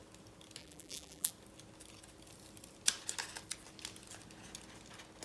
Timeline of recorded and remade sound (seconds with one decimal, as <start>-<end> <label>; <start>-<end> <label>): 0.0-0.6 recorded; 0.6-1.3 remade; 1.3-5.2 recorded